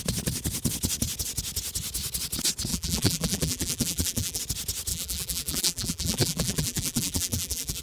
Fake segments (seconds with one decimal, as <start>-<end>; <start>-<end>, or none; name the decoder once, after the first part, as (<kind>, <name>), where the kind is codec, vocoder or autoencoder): 2.7-4.4 (vocoder, BigVGAN v2); 4.9-7.8